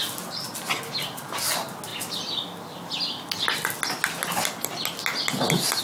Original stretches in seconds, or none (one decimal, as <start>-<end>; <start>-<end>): 0.0-5.8